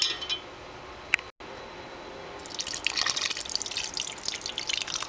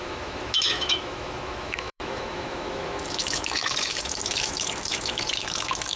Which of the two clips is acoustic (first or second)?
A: first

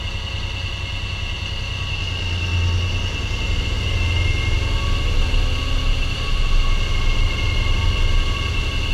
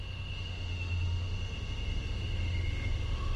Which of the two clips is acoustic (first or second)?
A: first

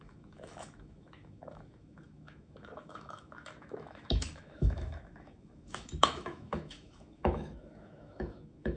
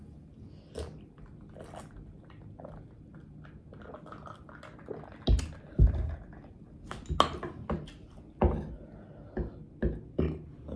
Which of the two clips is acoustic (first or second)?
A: second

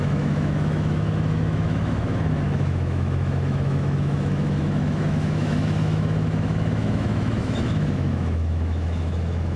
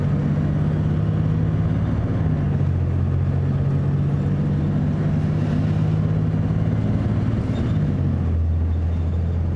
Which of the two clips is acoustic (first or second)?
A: second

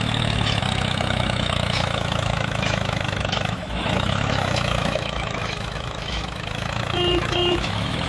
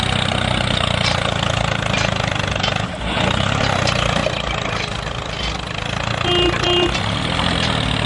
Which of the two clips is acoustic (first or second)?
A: second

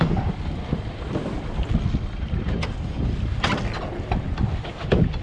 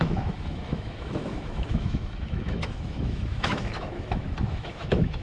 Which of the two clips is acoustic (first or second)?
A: first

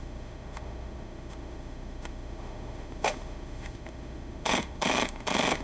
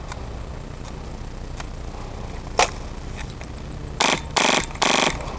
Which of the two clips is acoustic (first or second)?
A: second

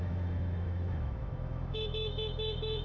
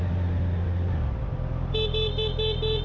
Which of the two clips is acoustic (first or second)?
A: second